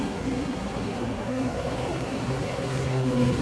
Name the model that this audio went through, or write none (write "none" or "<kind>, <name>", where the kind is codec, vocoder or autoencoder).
codec, SNAC